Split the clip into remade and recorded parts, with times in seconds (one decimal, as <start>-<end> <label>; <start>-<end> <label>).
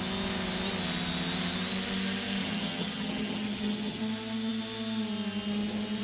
0.0-2.4 recorded; 2.4-4.0 remade; 4.0-6.0 recorded